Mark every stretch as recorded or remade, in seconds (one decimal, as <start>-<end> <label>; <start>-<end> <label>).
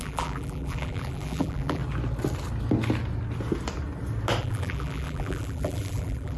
0.0-1.8 remade; 1.8-4.4 recorded; 4.4-6.4 remade